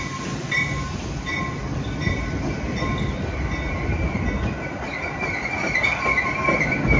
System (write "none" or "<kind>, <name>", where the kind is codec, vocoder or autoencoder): none